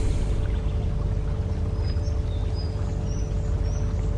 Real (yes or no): yes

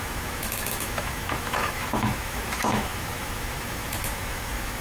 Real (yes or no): no